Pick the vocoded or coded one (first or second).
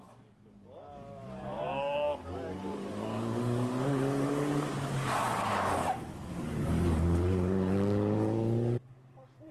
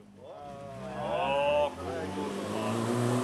first